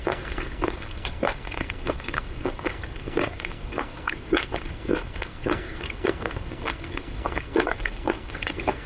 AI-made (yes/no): yes